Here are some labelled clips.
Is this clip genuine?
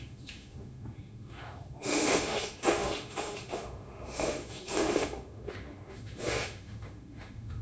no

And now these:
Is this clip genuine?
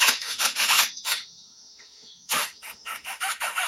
no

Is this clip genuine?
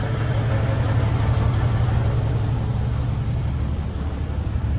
yes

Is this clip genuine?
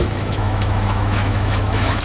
no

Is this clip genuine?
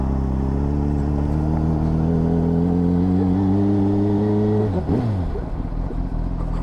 yes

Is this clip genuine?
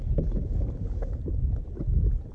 yes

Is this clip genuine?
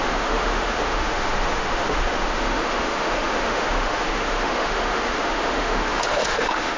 no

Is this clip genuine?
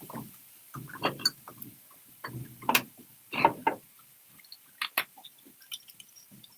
yes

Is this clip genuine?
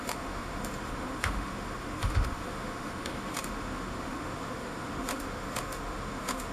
no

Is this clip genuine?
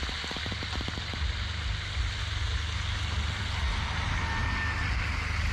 yes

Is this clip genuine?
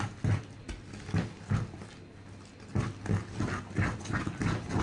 yes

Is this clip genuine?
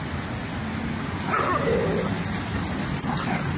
yes